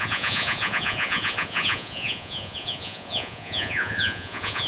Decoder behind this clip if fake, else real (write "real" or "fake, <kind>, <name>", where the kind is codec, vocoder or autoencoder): fake, vocoder, Vocos